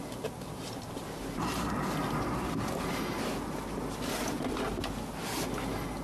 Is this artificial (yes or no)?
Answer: no